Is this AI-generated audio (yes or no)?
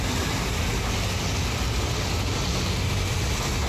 no